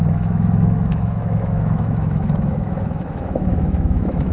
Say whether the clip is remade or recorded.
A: remade